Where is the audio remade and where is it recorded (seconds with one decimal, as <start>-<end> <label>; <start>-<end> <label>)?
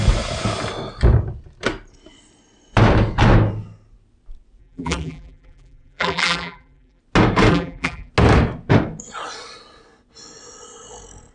0.0-4.6 recorded; 4.6-7.0 remade; 7.0-7.5 recorded; 7.5-8.1 remade; 8.1-11.3 recorded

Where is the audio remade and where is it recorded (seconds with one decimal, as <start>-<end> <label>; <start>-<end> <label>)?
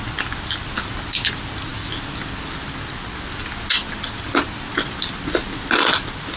0.0-6.4 recorded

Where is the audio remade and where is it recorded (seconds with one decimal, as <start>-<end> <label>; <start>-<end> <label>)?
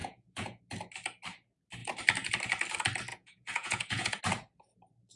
0.0-0.6 remade; 0.6-3.1 recorded; 3.1-4.2 remade; 4.2-5.2 recorded